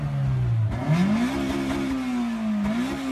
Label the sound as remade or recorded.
recorded